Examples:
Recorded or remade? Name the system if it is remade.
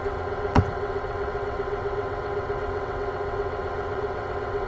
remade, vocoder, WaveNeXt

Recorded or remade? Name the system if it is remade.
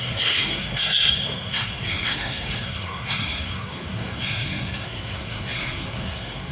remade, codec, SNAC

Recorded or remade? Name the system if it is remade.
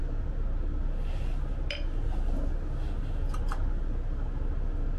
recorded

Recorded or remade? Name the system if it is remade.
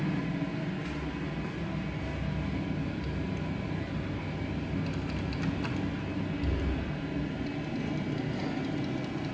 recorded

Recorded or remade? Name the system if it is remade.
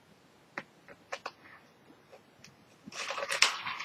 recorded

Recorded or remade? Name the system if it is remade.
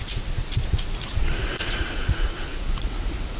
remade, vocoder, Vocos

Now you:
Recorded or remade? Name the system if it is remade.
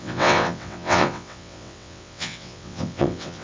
remade, vocoder, WaveNeXt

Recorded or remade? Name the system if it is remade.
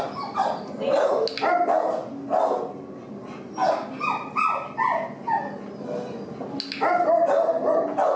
recorded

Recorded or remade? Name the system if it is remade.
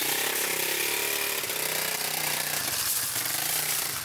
remade, vocoder, BigVGAN v2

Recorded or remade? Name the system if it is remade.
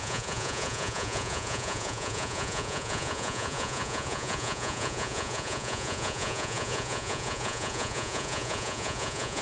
remade, vocoder, Vocos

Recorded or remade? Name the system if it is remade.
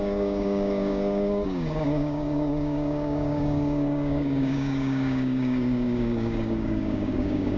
remade, codec, DAC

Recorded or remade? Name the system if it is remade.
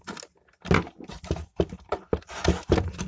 recorded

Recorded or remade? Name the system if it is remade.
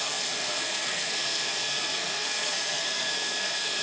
remade, codec, SNAC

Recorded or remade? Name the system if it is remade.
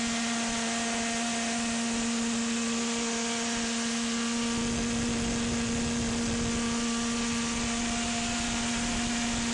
recorded